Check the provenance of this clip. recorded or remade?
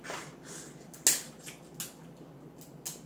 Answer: recorded